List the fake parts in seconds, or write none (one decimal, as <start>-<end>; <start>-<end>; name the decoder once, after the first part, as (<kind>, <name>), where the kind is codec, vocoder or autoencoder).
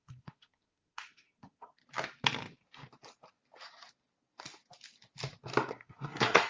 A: 0.0-1.8 (codec, SNAC); 5.7-6.5